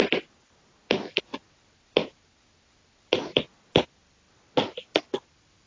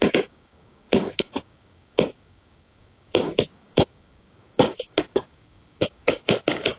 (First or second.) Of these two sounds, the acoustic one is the first